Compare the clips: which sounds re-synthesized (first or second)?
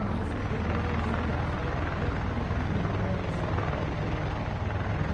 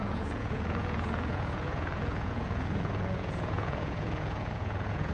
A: second